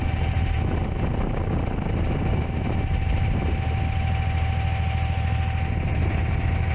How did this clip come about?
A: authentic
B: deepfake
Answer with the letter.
A